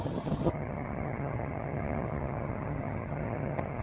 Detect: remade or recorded remade